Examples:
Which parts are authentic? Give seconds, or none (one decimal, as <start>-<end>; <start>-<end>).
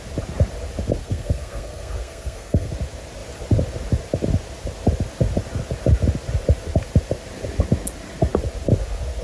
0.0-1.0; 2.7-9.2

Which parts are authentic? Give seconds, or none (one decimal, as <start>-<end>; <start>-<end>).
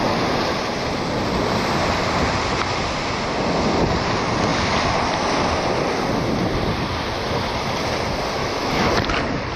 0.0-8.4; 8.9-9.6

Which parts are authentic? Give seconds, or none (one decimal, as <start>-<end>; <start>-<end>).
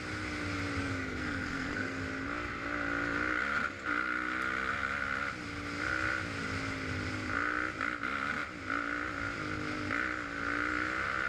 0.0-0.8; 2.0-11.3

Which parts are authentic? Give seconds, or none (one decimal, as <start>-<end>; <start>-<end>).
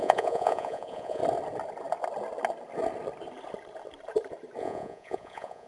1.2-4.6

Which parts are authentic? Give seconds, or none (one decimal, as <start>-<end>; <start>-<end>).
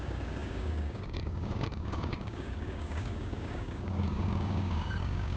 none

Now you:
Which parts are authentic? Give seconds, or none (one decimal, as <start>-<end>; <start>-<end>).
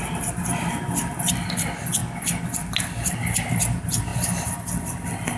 0.0-5.4